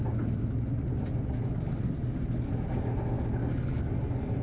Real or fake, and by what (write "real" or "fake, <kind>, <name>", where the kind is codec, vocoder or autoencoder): real